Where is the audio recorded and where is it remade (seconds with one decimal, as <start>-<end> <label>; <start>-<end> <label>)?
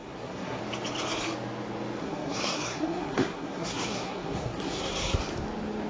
0.0-0.6 remade; 0.6-2.0 recorded; 2.0-5.2 remade; 5.2-5.9 recorded